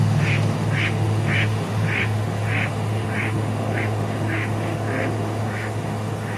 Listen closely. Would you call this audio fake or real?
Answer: fake